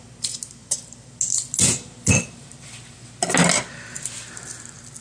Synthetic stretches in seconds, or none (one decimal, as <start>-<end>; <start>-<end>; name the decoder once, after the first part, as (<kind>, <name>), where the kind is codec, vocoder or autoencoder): none

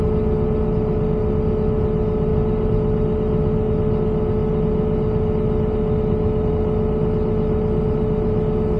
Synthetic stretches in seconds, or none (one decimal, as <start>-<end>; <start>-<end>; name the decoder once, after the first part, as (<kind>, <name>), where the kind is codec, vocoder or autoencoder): none

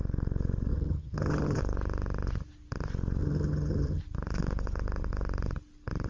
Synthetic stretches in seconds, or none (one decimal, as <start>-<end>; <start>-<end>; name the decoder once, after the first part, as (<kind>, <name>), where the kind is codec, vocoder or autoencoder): 0.7-1.6 (vocoder, HiFi-GAN); 3.2-4.0

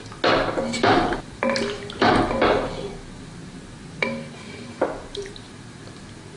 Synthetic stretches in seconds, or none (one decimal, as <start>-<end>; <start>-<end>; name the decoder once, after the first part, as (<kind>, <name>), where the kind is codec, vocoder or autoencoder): 0.7-2.9 (vocoder, BigVGAN v2); 3.4-6.0

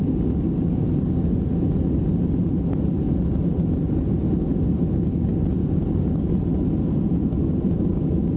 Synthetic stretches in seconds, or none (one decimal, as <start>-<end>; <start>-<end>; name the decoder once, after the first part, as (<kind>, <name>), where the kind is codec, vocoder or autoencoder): none

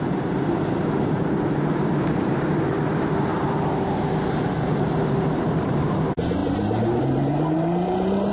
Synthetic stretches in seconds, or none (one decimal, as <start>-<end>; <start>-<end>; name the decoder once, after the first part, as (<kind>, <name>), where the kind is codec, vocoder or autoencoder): 0.0-8.3 (vocoder, BigVGAN v2)

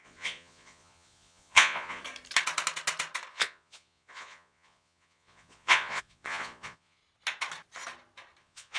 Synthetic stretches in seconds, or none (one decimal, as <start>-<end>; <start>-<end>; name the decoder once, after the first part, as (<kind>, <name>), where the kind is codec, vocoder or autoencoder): 0.0-2.0 (vocoder, Vocos); 3.3-7.0; 8.4-8.8

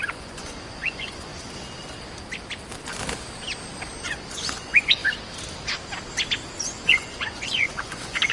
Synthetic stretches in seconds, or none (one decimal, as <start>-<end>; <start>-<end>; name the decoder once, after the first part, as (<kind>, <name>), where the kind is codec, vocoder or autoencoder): 0.0-1.3 (vocoder, Vocos); 4.0-5.0; 6.6-8.3